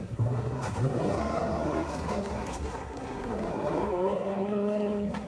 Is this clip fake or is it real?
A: fake